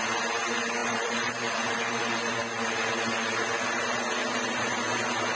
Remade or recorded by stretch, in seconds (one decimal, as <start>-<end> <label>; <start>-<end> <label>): 0.0-0.8 recorded; 0.8-4.0 remade; 4.0-5.3 recorded